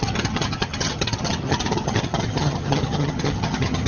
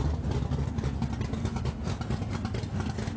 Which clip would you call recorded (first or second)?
second